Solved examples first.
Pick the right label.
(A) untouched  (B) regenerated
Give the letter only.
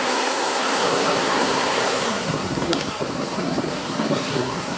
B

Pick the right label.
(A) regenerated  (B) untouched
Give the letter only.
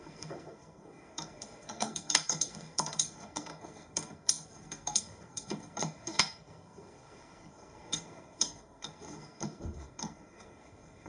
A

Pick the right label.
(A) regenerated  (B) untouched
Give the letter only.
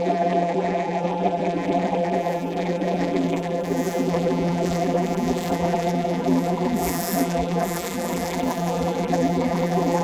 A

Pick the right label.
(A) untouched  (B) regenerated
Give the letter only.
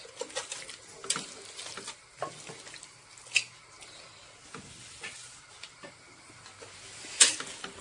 A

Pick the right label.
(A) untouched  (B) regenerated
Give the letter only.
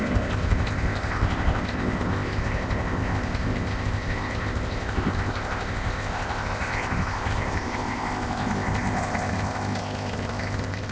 B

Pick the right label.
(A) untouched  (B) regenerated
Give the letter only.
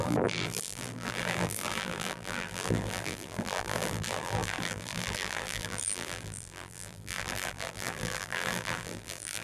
B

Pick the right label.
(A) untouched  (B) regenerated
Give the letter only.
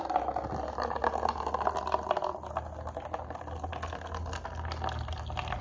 A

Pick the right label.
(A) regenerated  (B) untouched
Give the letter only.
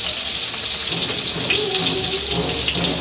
B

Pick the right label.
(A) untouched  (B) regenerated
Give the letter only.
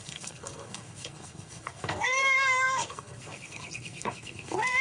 B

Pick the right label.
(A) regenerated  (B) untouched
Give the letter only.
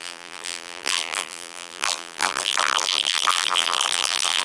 A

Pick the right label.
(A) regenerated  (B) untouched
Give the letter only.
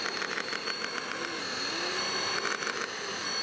B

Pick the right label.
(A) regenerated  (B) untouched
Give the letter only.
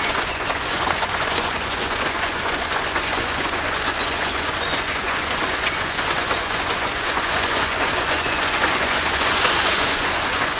A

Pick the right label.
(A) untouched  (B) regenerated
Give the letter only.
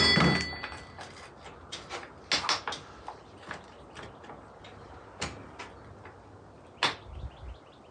A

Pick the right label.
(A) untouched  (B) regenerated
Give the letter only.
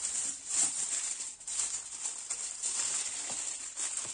A